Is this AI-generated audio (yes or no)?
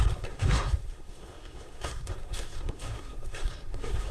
yes